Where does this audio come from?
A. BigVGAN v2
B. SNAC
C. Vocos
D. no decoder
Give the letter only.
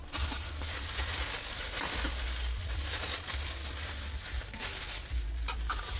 D